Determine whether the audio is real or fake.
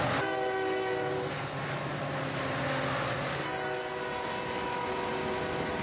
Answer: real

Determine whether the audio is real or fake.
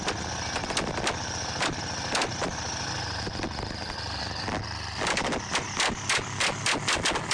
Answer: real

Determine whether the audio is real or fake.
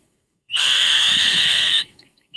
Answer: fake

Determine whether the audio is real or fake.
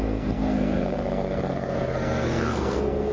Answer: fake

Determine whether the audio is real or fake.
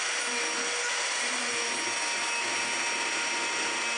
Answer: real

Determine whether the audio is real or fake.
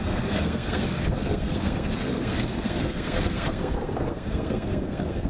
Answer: fake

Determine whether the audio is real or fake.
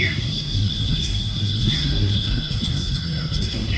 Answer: fake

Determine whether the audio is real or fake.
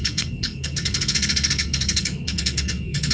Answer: fake